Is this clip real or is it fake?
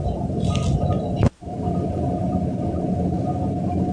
real